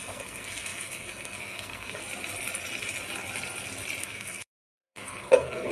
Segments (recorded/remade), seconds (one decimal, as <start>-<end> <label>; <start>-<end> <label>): 0.0-2.0 remade; 2.0-4.0 recorded; 4.0-5.7 remade